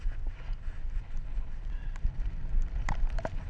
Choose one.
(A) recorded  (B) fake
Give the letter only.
A